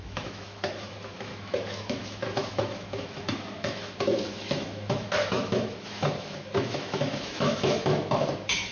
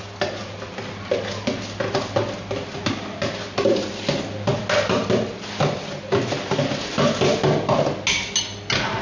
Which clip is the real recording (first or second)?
second